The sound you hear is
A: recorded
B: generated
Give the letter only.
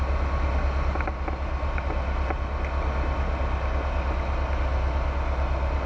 A